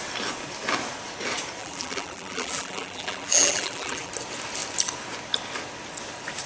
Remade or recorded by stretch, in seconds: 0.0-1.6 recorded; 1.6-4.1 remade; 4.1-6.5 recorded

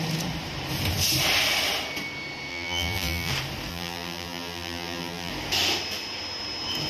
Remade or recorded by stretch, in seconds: 0.0-2.5 recorded; 2.5-3.3 remade; 3.3-3.7 recorded; 3.7-5.3 remade; 5.3-6.9 recorded

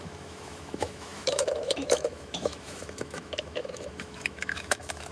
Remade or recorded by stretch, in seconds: 0.0-5.1 remade